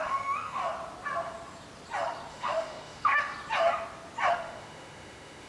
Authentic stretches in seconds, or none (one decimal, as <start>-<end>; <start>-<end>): 0.6-2.3; 3.3-4.3